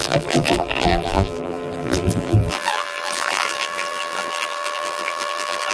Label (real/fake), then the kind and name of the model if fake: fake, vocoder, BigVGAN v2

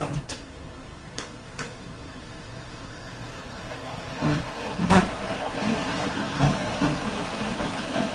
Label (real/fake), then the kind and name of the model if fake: fake, codec, SNAC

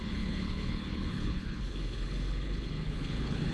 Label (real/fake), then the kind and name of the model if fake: fake, codec, HILCodec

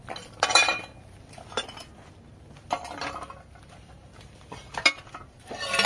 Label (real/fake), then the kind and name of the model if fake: real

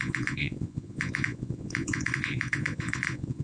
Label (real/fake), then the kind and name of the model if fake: fake, vocoder, Vocos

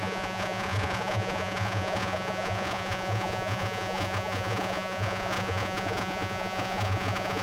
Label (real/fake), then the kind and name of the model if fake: fake, vocoder, Vocos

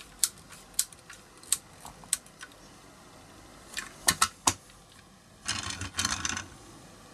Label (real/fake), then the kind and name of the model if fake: real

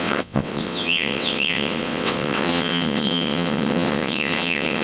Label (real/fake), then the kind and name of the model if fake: fake, vocoder, WaveNeXt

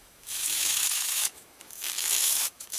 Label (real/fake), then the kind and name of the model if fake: fake, autoencoder, DAC-VAE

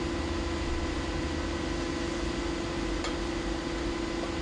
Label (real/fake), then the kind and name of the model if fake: real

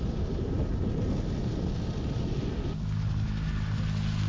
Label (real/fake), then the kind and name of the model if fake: real